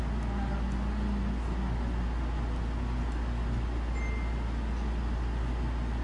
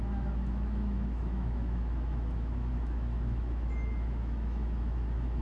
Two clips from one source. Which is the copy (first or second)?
second